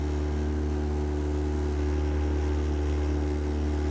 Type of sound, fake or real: real